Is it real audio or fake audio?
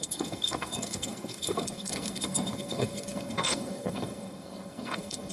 fake